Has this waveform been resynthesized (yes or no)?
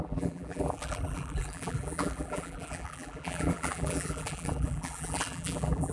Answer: yes